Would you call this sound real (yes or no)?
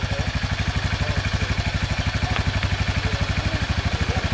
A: yes